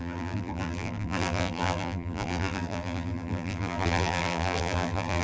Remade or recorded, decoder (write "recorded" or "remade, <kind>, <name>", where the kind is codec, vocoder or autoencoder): remade, vocoder, BigVGAN v2